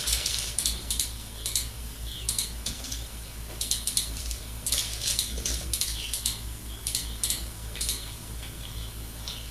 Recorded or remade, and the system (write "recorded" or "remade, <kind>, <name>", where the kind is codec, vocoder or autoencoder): remade, codec, SNAC